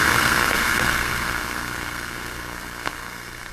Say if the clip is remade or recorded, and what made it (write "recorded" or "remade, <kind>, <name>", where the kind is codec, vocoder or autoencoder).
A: remade, codec, SNAC